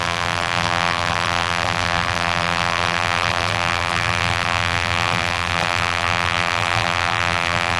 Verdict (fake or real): fake